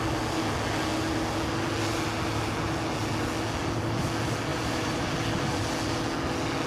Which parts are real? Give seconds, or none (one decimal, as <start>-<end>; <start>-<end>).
0.0-4.5; 5.1-6.7